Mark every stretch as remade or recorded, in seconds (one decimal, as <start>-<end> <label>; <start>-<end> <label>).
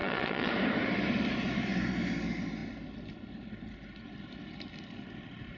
0.0-0.5 remade; 0.5-5.6 recorded